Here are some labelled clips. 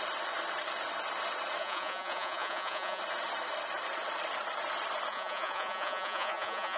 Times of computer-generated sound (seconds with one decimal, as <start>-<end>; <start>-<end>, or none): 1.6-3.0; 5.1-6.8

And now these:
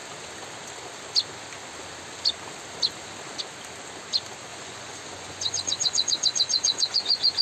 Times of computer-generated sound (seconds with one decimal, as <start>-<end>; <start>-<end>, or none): 4.5-7.4

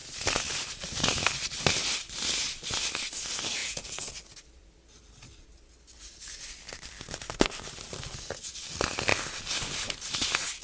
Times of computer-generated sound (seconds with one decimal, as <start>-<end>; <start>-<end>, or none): 3.6-4.1